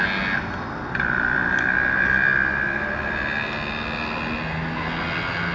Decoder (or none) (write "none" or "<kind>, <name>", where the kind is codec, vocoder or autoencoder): none